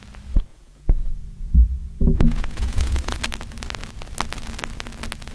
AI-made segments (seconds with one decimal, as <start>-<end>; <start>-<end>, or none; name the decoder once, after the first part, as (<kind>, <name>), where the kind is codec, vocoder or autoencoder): 0.5-3.2 (vocoder, Vocos)